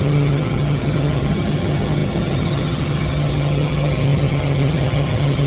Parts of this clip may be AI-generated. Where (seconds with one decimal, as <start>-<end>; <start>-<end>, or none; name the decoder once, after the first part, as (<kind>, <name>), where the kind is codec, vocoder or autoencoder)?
0.0-5.5 (vocoder, HiFi-GAN)